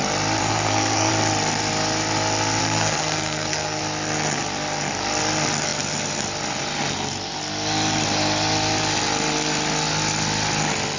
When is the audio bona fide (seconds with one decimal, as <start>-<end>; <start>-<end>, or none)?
0.0-0.4; 1.1-2.6; 3.8-11.0